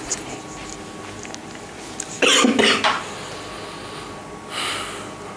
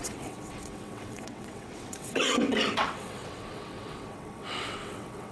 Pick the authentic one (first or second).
first